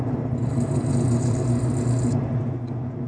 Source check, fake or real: real